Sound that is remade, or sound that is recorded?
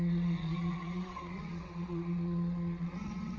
remade